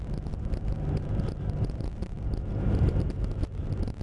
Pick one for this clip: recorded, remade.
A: remade